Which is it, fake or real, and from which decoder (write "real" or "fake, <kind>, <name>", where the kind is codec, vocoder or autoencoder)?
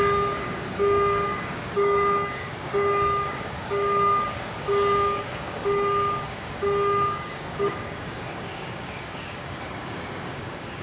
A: fake, codec, DAC